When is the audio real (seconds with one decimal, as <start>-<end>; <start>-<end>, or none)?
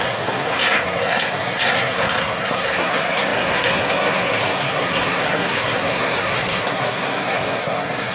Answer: none